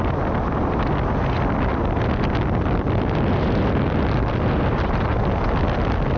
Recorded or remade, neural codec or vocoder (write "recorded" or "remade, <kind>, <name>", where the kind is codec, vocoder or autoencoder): recorded